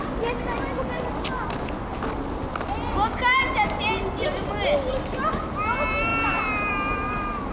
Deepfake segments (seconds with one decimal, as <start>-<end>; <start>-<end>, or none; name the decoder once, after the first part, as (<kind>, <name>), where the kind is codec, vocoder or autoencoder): none